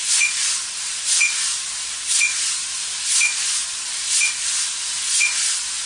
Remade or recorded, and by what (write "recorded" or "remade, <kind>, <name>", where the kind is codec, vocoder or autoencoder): recorded